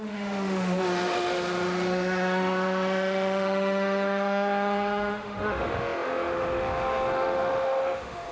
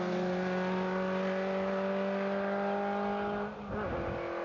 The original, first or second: second